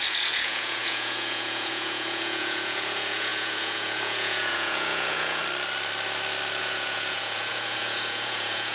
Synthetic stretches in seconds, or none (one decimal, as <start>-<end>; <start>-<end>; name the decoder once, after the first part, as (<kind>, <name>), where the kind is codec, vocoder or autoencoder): 0.0-5.4 (vocoder, Vocos); 6.6-8.7